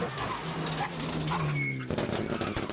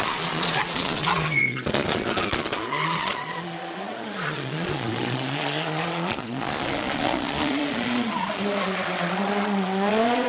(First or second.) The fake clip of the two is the second